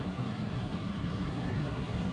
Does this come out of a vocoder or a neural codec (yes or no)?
yes